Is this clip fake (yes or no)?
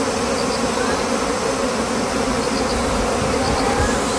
no